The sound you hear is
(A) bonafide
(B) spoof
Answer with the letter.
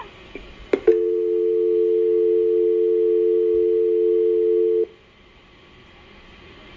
A